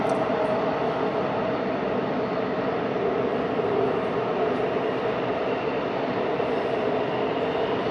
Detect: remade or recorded remade